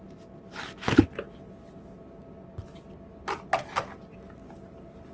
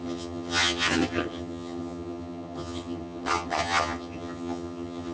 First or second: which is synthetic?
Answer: second